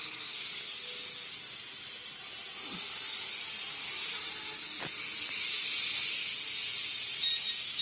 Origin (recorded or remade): recorded